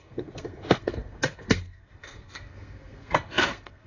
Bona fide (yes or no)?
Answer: no